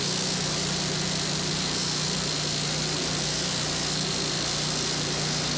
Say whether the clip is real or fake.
real